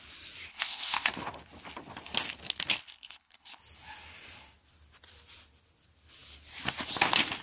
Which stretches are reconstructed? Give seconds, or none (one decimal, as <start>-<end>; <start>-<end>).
0.5-1.1; 2.8-3.6